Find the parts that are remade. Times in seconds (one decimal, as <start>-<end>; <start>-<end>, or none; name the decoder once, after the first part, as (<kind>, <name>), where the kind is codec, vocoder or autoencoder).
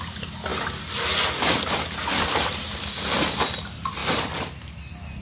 none